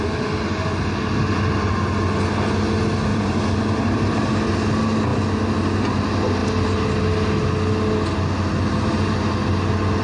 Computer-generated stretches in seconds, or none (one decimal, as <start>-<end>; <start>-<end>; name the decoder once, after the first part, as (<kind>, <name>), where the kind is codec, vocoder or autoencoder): 3.1-4.4 (vocoder, BigVGAN v2)